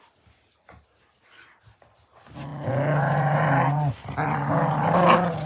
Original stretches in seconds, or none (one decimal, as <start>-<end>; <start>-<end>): 0.0-5.5